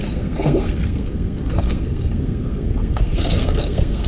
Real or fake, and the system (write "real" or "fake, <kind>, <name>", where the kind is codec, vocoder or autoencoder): fake, codec, SNAC